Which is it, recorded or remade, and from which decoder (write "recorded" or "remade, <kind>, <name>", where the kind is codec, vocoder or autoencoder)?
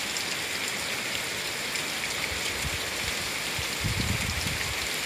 recorded